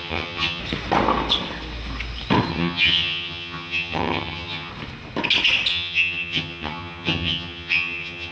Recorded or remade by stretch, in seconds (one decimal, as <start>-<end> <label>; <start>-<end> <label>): 0.0-0.6 remade; 0.6-2.5 recorded; 2.5-4.7 remade; 4.7-5.7 recorded; 5.7-8.3 remade